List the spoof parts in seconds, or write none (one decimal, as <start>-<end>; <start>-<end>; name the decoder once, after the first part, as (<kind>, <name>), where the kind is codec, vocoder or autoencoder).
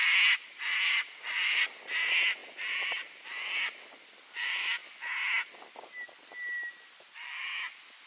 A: none